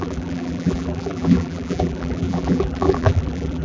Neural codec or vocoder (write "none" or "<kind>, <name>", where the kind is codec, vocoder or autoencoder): vocoder, BigVGAN v2